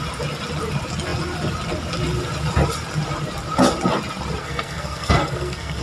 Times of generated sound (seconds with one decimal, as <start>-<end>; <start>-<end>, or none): 4.4-5.8